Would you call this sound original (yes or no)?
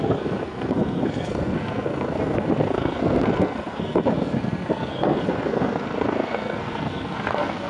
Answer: no